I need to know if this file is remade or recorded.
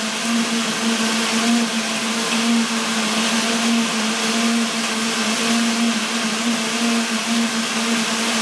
recorded